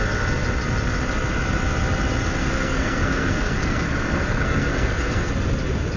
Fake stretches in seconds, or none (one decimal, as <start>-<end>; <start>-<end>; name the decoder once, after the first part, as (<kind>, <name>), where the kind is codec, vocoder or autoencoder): 2.4-5.3 (codec, SNAC)